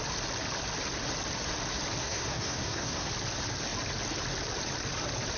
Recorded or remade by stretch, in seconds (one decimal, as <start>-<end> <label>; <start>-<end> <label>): 0.0-2.0 recorded; 2.0-3.1 remade; 3.1-5.4 recorded